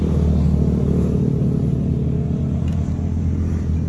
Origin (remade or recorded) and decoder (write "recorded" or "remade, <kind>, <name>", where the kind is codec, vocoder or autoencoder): recorded